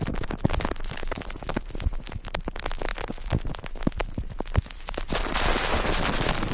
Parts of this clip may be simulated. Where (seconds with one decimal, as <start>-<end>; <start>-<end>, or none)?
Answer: none